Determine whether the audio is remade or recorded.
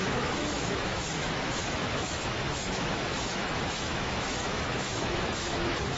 remade